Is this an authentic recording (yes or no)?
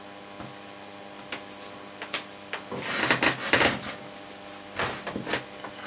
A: yes